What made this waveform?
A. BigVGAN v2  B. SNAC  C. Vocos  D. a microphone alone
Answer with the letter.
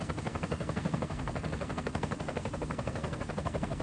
B